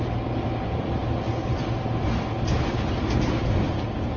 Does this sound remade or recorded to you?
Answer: recorded